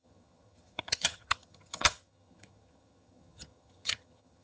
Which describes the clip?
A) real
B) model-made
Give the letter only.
B